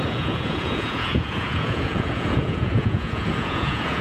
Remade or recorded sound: remade